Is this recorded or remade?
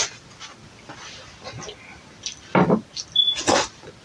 recorded